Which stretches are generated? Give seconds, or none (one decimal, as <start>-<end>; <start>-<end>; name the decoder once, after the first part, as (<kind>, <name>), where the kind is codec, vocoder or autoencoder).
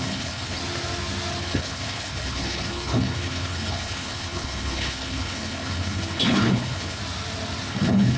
0.0-0.6 (codec, HILCodec); 1.4-7.0; 7.7-8.2